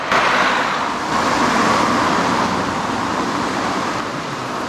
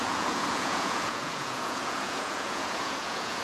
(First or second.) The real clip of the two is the first